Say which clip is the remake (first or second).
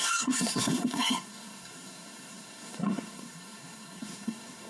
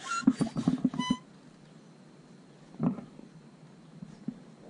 first